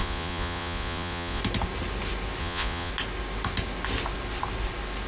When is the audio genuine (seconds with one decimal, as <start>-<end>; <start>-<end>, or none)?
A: 1.4-2.4; 2.9-5.1